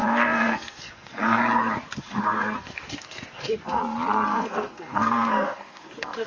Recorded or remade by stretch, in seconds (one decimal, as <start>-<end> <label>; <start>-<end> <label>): 0.0-1.4 remade; 1.4-2.0 recorded; 2.0-3.8 remade; 3.8-4.3 recorded; 4.3-6.3 remade